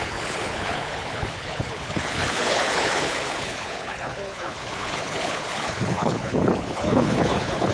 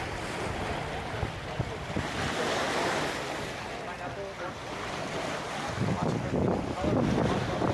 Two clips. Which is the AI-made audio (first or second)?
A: first